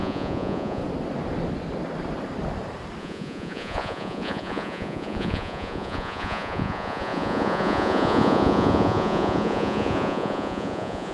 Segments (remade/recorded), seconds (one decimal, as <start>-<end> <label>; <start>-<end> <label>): 0.0-0.8 remade; 0.8-3.0 recorded; 3.0-11.1 remade